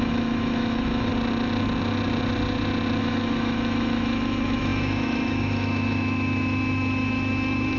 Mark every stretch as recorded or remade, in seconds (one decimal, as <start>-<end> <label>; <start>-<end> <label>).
0.0-1.1 remade; 1.1-3.0 recorded; 3.0-7.8 remade